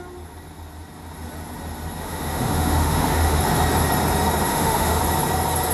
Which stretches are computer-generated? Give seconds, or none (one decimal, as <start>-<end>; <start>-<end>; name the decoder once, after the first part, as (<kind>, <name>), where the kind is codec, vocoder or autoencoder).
2.0-3.4 (autoencoder, DAC-VAE); 4.5-5.0